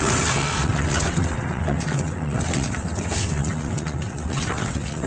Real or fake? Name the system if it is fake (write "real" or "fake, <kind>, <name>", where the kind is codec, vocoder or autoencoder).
fake, vocoder, WaveNeXt